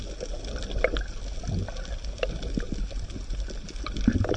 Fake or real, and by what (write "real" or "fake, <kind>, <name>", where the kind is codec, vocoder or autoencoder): real